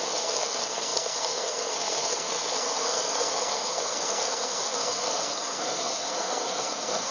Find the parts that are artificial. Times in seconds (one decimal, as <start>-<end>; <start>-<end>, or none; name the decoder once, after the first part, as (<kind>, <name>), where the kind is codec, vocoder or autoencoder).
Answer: 0.0-7.1 (codec, SNAC)